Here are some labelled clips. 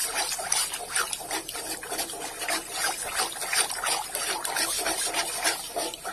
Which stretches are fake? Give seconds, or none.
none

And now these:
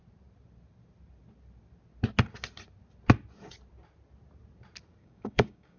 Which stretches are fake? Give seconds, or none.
5.0-5.8

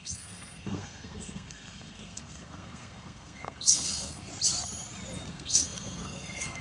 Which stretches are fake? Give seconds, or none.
0.0-4.3; 5.3-6.6

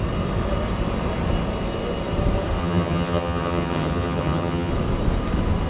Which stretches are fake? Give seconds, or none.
2.6-4.7